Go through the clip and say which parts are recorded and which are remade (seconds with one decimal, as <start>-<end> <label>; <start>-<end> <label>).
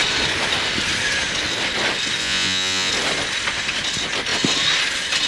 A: 0.0-2.2 recorded; 2.2-2.9 remade; 2.9-5.3 recorded